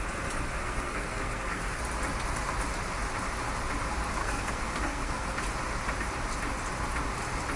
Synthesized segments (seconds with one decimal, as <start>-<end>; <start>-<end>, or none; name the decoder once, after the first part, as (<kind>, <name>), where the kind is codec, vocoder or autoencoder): 0.6-1.8 (codec, SNAC); 4.2-5.4